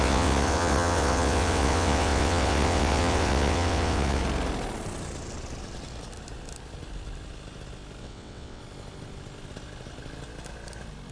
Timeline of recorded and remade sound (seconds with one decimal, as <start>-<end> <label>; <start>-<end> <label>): 0.0-4.2 remade; 4.2-8.0 recorded; 8.0-8.6 remade; 8.6-11.1 recorded